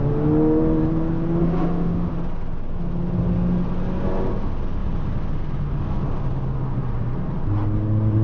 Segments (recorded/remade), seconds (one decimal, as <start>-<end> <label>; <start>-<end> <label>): 0.0-1.4 recorded; 1.4-2.1 remade; 2.1-8.2 recorded